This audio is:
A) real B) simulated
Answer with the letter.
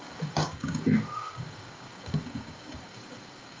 B